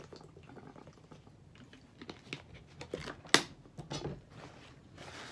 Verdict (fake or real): real